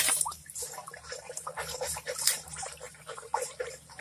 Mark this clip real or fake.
fake